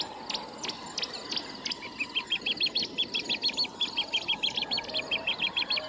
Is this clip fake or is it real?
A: real